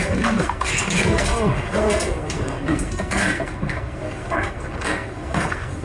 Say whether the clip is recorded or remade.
remade